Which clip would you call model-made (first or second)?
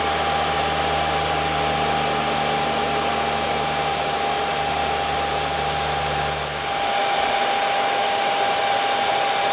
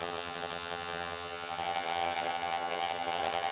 second